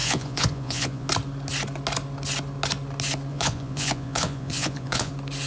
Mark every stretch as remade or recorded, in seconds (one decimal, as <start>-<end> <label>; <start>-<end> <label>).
0.0-1.1 remade; 1.1-3.3 recorded; 3.3-5.1 remade; 5.1-5.5 recorded

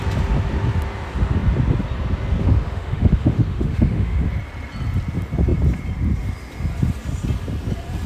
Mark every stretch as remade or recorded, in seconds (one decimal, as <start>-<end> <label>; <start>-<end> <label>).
0.0-2.4 recorded; 2.4-4.3 remade; 4.3-8.1 recorded